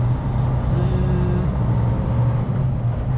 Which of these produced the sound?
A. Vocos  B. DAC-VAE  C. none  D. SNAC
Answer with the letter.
C